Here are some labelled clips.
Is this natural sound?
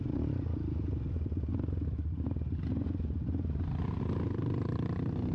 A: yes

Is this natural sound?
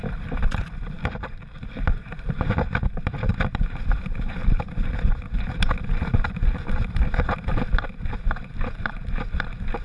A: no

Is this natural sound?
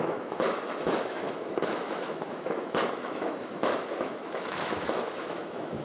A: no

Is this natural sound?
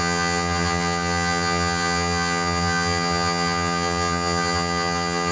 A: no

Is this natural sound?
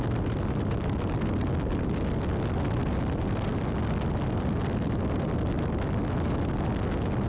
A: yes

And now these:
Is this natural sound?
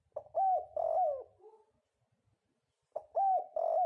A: yes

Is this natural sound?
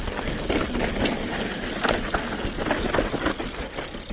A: yes